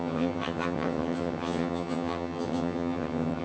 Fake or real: fake